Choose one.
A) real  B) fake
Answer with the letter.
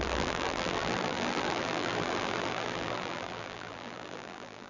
B